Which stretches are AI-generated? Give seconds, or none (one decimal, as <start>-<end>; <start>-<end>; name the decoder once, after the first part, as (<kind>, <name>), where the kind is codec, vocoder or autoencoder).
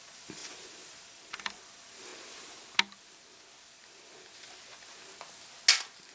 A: 0.0-2.1 (vocoder, BigVGAN v2)